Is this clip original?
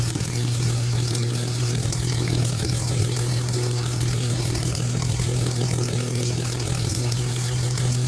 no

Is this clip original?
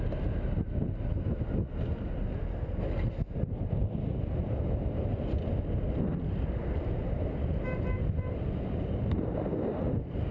yes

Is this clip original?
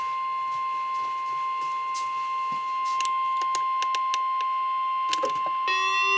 yes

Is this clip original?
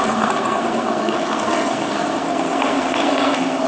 no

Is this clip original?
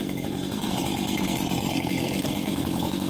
no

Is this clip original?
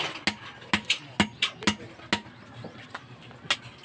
yes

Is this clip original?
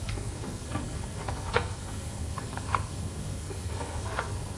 no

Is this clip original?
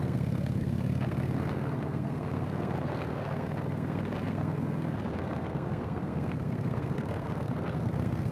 no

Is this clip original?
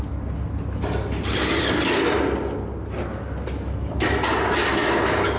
yes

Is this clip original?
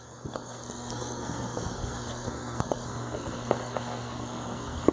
no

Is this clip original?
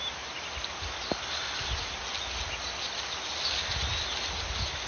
yes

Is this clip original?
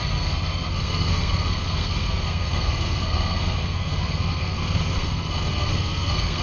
no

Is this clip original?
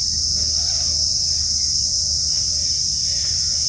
yes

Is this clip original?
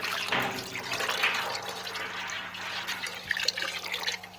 yes